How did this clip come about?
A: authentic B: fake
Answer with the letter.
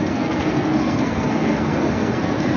B